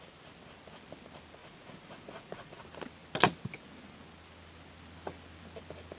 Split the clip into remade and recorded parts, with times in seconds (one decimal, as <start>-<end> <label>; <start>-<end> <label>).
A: 0.0-1.4 recorded; 1.4-2.6 remade; 2.6-6.0 recorded